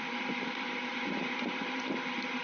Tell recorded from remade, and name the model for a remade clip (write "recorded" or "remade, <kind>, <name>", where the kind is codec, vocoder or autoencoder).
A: remade, vocoder, BigVGAN v2